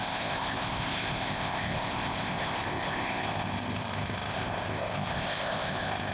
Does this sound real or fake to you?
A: fake